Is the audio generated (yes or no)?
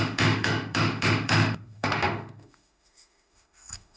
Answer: yes